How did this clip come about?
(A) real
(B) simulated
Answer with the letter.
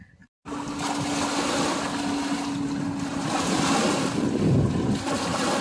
A